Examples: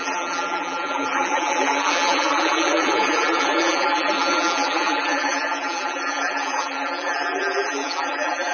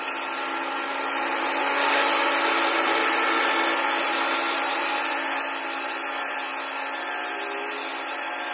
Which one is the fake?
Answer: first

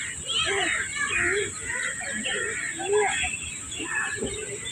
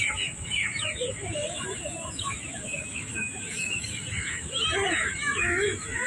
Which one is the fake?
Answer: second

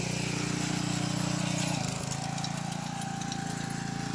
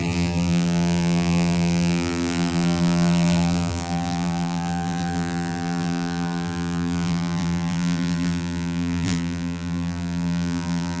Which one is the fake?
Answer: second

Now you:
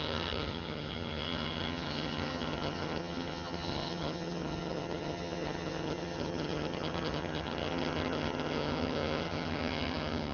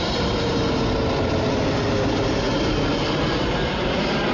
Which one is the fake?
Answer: first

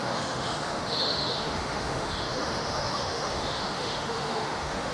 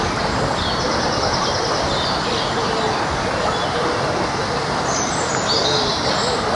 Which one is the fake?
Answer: first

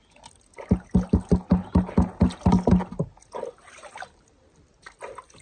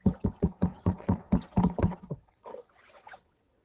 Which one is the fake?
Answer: second